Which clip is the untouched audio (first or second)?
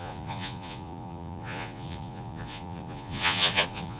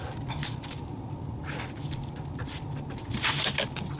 second